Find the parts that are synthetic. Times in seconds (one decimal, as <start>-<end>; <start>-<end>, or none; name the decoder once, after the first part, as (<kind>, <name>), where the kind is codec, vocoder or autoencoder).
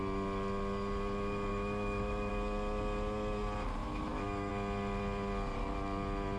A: 1.5-2.3 (autoencoder, DAC-VAE); 3.8-4.5